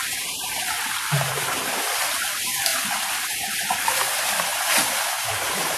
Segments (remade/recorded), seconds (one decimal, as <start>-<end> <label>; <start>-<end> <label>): 0.0-4.5 remade; 4.5-5.3 recorded; 5.3-5.8 remade